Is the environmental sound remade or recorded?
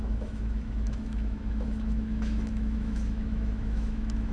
remade